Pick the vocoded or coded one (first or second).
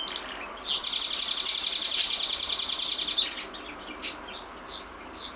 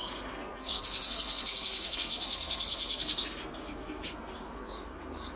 second